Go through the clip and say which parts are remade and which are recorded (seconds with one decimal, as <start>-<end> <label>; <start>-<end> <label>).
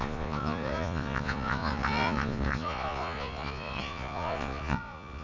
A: 0.0-5.2 remade